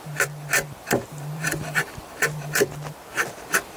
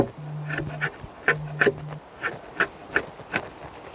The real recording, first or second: second